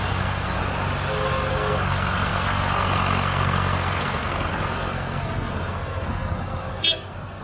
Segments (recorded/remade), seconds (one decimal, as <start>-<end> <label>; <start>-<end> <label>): 0.0-0.6 remade; 0.6-1.5 recorded; 1.5-7.4 remade